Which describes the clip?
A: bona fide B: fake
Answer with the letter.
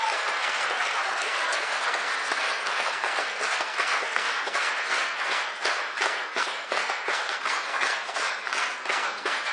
B